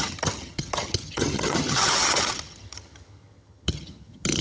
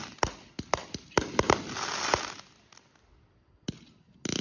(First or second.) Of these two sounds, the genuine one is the second